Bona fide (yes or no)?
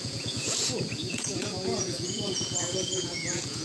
no